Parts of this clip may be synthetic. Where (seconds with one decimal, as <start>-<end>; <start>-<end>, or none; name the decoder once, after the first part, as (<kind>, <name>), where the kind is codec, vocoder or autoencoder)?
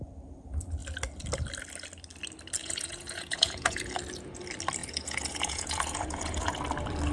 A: 2.6-3.9 (vocoder, Vocos); 4.8-6.6